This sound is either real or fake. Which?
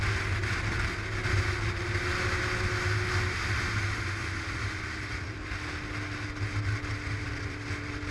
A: real